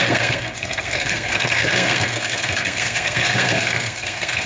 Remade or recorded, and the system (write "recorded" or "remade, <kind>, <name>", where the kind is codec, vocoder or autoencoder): remade, codec, SNAC